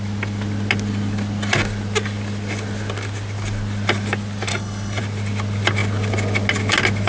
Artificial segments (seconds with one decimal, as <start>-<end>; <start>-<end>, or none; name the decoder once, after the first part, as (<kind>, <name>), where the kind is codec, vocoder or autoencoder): 4.5-5.0 (codec, HILCodec)